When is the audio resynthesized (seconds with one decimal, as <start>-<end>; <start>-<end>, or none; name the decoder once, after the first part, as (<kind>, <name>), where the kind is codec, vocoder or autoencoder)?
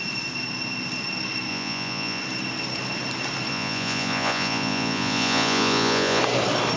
1.5-2.2 (vocoder, Vocos); 3.5-6.2